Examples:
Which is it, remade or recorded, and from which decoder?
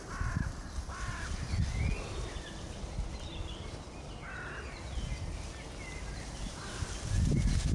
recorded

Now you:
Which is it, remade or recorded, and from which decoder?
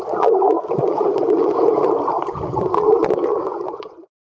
remade, vocoder, Vocos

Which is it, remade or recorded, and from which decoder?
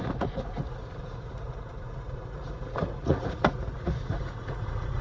remade, vocoder, Vocos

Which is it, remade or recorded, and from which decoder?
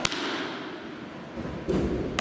recorded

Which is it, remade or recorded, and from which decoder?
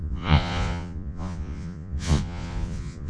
remade, vocoder, Vocos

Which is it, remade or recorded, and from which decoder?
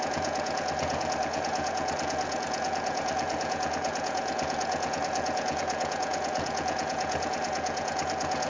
remade, vocoder, Vocos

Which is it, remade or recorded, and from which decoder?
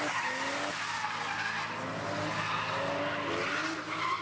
recorded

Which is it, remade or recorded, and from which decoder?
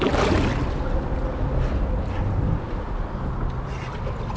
recorded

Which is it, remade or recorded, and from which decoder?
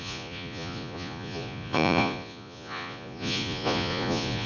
remade, vocoder, Vocos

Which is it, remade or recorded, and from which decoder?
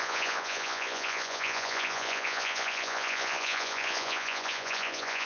remade, vocoder, Vocos